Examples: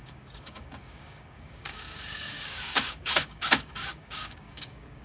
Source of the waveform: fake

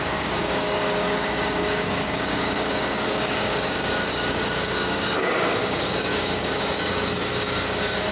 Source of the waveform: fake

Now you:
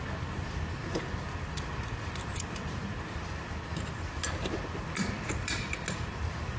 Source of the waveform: real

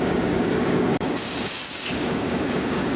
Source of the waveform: fake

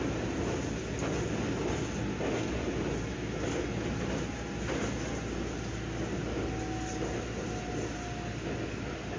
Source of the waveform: real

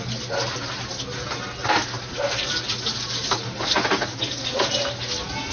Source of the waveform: real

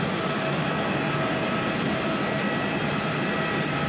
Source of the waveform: real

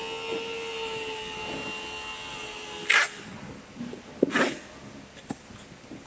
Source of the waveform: real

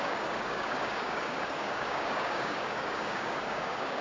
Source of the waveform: fake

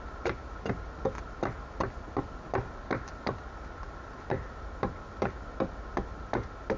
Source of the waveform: real